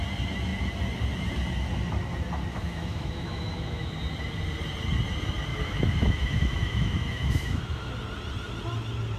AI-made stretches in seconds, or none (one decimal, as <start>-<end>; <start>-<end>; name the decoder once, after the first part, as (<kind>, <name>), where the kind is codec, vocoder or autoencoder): 2.5-3.9 (autoencoder, DAC-VAE); 5.5-7.9